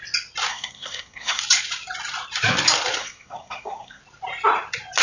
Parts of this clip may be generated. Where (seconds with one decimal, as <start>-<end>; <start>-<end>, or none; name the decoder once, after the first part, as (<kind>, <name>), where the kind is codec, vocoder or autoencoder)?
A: 0.5-1.4 (codec, SNAC); 3.0-4.0